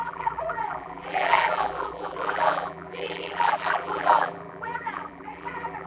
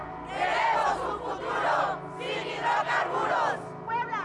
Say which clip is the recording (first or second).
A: second